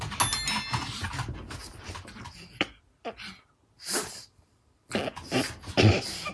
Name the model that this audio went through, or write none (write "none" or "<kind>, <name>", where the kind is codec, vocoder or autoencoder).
none